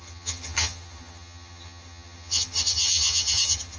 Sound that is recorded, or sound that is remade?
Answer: remade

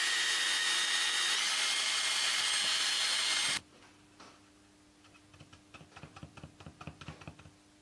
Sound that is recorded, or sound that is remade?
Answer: recorded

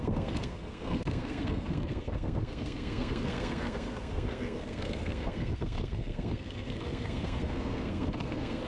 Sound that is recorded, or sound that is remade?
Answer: remade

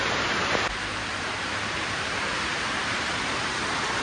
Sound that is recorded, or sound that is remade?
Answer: remade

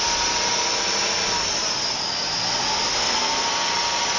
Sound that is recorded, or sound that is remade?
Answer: recorded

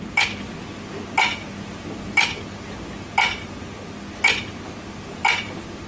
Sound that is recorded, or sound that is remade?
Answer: recorded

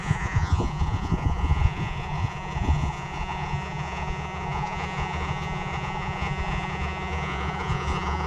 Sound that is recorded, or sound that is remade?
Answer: remade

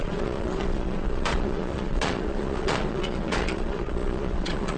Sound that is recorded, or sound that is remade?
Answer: remade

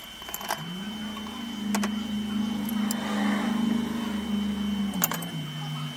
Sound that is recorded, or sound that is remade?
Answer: recorded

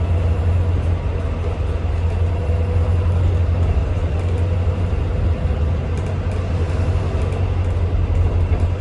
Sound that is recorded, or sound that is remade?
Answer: recorded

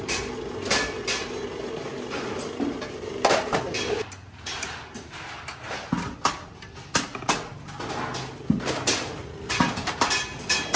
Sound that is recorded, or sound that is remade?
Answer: recorded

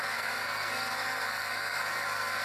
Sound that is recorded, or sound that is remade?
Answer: remade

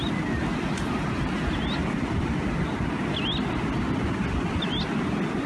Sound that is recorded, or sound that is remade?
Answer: recorded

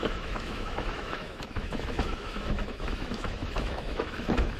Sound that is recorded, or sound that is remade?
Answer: remade